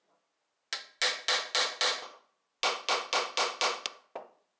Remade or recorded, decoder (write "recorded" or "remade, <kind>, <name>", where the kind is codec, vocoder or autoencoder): recorded